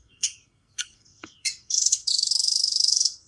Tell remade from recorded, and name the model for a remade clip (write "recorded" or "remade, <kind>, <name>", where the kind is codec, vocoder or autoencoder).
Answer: remade, codec, SNAC